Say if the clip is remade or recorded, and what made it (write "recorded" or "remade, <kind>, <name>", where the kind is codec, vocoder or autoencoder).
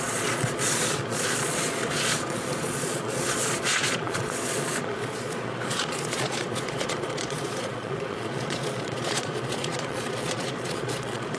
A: remade, vocoder, Vocos